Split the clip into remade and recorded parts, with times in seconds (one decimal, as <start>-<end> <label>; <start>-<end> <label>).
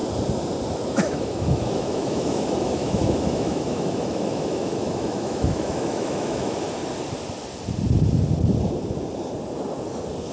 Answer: 0.0-0.9 recorded; 0.9-6.8 remade; 6.8-10.3 recorded